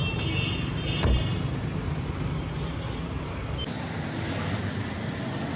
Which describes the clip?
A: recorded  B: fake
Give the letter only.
A